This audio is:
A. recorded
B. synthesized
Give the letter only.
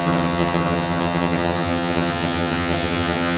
B